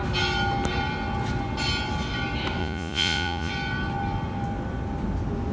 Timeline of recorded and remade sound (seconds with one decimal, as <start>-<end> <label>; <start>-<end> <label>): 0.0-2.6 recorded; 2.6-3.5 remade; 3.5-5.5 recorded